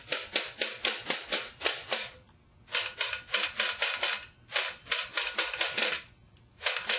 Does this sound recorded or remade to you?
recorded